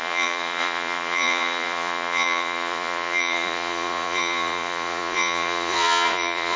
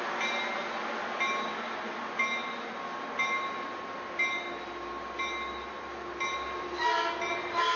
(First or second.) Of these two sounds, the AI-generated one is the first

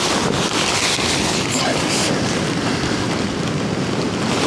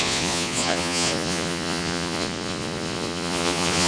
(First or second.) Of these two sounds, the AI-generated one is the second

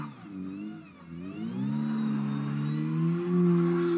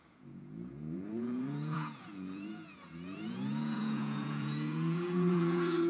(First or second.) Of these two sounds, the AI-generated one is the second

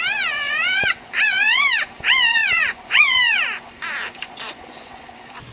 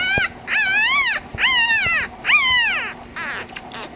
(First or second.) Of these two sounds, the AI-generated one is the first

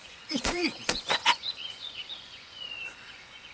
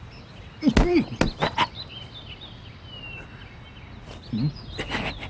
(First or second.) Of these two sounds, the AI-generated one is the first